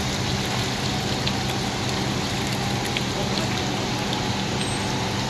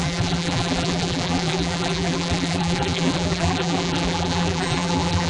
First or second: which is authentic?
first